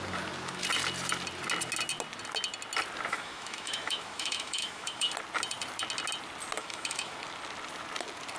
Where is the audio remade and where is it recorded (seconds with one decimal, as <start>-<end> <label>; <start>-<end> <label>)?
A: 0.0-3.1 recorded; 3.1-5.1 remade; 5.1-6.6 recorded; 6.6-7.2 remade; 7.2-8.4 recorded